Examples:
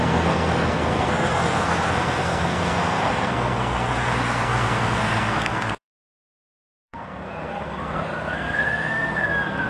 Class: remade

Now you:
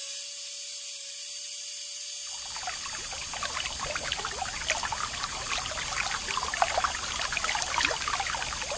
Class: recorded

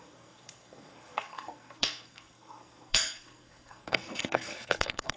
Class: remade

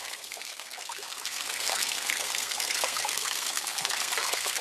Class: remade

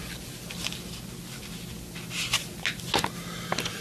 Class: recorded